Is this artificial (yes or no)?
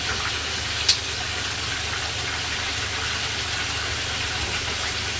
no